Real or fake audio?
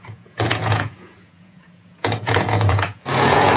fake